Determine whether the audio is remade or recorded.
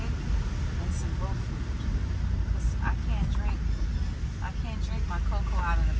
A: recorded